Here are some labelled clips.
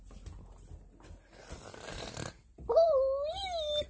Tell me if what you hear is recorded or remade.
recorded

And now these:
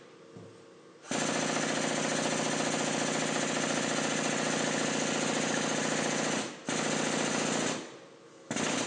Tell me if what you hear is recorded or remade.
recorded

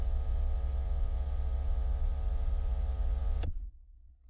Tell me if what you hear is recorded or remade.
remade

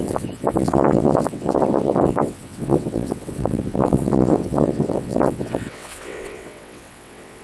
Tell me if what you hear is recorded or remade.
remade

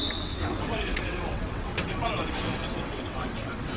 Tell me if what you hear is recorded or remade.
remade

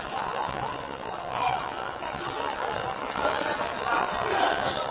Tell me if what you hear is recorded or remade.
remade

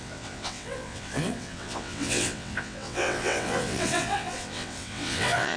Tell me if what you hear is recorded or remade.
remade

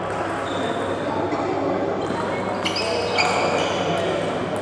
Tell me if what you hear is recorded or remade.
recorded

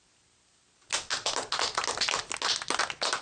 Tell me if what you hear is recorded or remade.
recorded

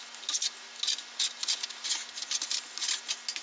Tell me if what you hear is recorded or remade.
recorded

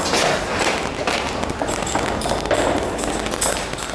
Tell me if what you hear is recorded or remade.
recorded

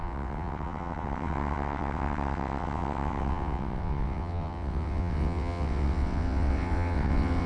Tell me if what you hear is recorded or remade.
remade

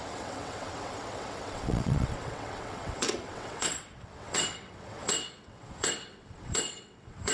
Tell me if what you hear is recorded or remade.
remade